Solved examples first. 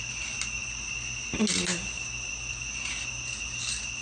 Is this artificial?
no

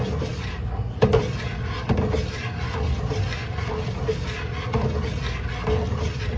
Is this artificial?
no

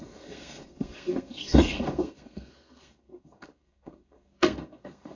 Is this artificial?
yes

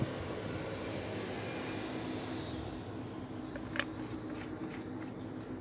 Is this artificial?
no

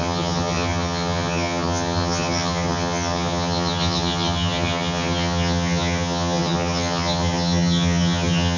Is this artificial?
yes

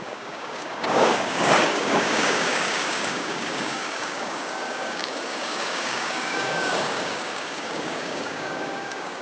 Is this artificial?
yes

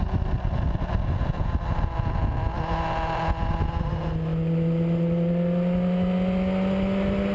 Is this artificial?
no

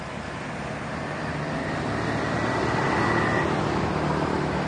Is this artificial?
no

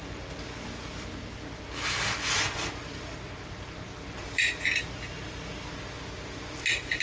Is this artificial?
no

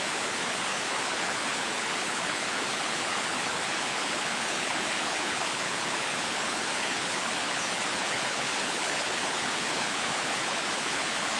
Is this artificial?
yes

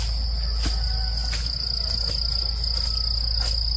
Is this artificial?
no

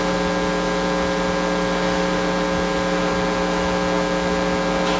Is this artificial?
no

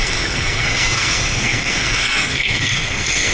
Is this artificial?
yes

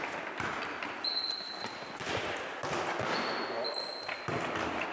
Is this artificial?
no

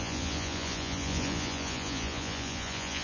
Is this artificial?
yes